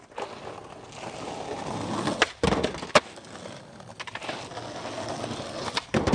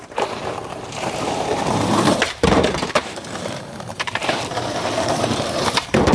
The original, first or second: first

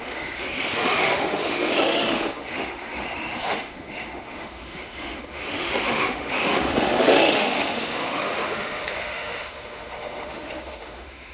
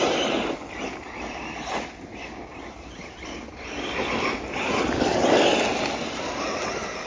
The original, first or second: second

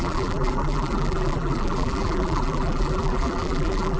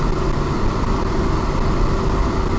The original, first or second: second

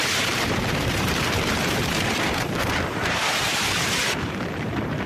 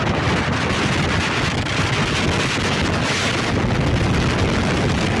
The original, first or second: second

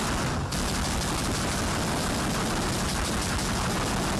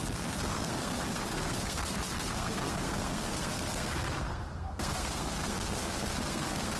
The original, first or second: first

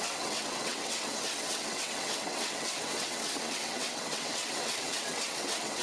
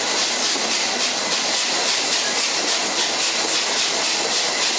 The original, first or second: second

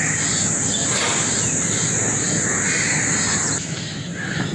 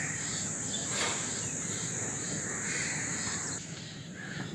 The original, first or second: first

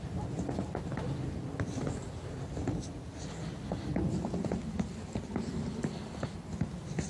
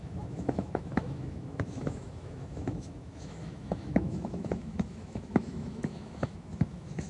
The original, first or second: first